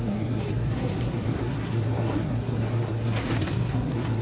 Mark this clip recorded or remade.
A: remade